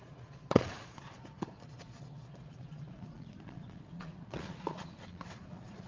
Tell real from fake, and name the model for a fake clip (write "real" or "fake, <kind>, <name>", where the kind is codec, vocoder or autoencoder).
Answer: fake, vocoder, Vocos